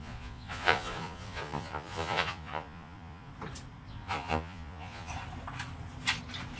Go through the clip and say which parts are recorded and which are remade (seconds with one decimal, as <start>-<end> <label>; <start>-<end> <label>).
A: 0.0-3.3 remade; 3.3-3.9 recorded; 3.9-5.1 remade; 5.1-6.6 recorded